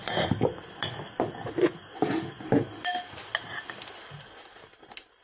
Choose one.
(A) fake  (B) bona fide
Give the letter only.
B